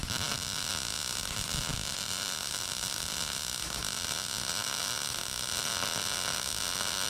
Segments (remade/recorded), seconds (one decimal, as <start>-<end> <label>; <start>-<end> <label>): 0.0-0.7 remade; 0.7-1.2 recorded; 1.2-5.5 remade; 5.5-7.1 recorded